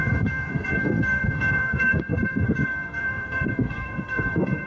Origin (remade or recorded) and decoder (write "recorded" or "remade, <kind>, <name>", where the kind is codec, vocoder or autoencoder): remade, codec, SNAC